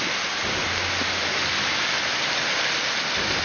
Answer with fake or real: real